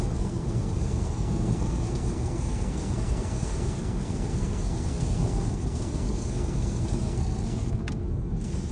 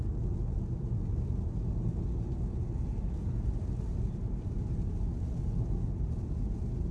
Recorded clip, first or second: second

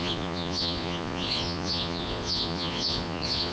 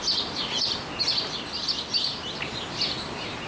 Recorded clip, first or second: second